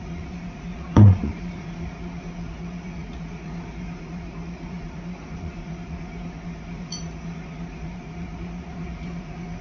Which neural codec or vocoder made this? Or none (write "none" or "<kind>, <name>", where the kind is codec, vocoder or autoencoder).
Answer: vocoder, Vocos